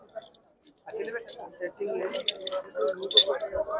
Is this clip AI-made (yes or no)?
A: no